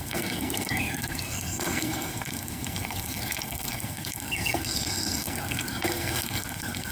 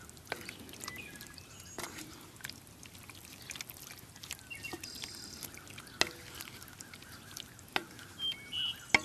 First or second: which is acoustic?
second